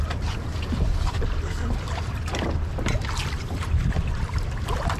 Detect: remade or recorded remade